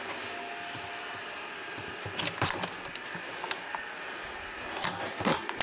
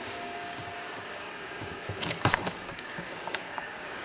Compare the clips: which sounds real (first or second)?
first